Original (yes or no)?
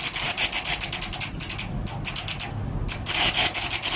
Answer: yes